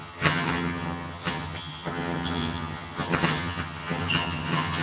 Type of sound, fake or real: fake